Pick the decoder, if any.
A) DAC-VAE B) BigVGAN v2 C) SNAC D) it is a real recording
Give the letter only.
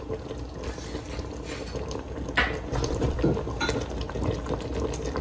D